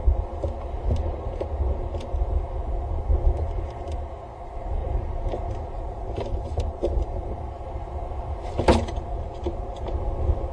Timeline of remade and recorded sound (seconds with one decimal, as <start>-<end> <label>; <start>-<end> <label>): 0.0-4.8 recorded; 4.8-7.8 remade; 7.8-10.5 recorded

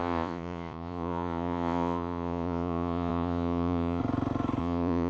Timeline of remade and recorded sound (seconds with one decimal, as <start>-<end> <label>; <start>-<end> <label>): 0.0-4.0 remade; 4.0-4.6 recorded; 4.6-5.1 remade

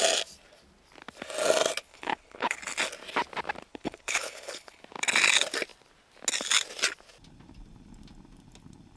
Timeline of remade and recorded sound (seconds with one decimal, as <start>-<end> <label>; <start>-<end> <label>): 0.0-1.8 recorded; 1.8-2.6 remade; 2.6-3.7 recorded; 3.7-4.8 remade; 4.8-9.0 recorded

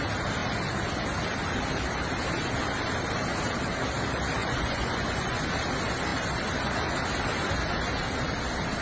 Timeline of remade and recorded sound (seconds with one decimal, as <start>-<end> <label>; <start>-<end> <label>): 0.0-4.4 recorded; 4.4-5.4 remade; 5.4-8.8 recorded

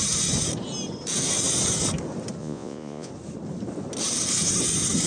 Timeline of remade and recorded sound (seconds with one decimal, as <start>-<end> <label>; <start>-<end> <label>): 0.0-2.4 recorded; 2.4-3.1 remade; 3.1-5.1 recorded

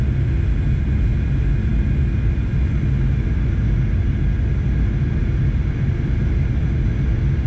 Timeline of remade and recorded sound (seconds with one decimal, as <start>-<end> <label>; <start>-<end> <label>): 0.0-7.5 recorded

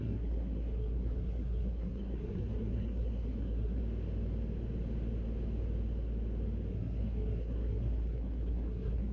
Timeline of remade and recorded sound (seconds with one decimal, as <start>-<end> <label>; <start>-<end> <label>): 0.0-3.8 remade; 3.8-6.7 recorded; 6.7-9.1 remade

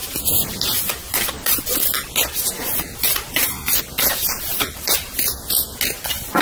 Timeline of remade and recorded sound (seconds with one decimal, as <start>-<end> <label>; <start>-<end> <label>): 0.0-6.4 recorded